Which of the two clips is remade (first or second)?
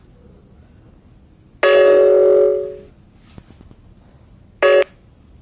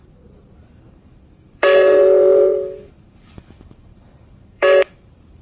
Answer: second